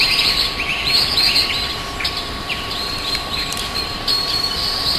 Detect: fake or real fake